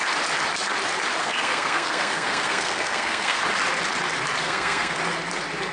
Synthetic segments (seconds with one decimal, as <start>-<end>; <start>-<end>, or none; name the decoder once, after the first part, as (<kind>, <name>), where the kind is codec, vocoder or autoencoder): 1.2-3.4 (codec, SNAC); 4.4-5.0